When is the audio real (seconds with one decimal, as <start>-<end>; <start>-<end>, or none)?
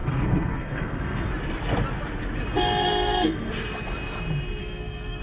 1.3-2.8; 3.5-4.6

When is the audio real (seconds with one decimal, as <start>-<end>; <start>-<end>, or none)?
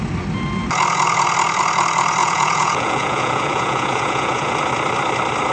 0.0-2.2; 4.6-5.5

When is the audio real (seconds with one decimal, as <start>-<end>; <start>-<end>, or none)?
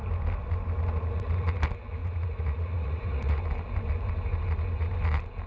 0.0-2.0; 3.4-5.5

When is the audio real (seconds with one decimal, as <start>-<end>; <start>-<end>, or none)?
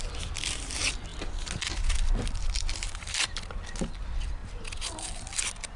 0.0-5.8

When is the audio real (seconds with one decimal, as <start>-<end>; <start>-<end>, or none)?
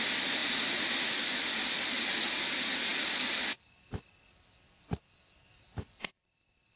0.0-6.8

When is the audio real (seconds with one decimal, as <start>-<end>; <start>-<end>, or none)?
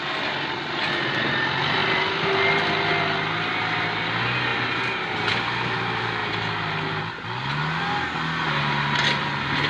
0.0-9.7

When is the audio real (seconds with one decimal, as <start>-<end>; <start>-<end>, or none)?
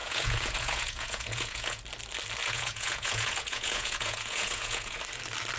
1.8-2.4; 5.0-5.6